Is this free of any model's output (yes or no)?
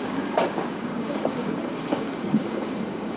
no